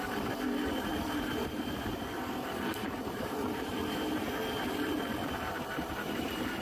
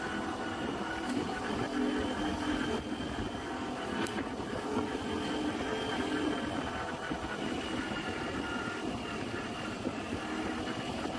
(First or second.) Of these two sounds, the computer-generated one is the first